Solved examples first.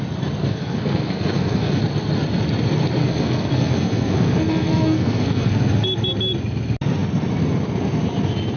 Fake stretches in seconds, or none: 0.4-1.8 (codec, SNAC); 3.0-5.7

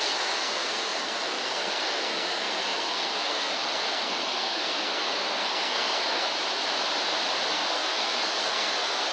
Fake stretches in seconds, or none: 0.0-6.3 (codec, SNAC); 7.5-9.1

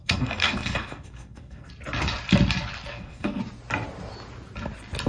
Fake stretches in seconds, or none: 0.0-1.7 (codec, SNAC); 2.9-3.4

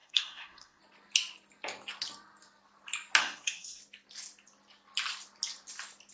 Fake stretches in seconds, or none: 0.0-0.8 (codec, SNAC); 3.2-3.8